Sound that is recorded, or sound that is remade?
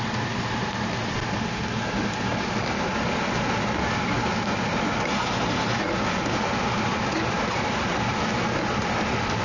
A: recorded